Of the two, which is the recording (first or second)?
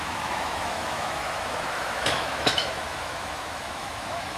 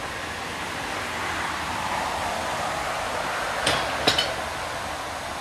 second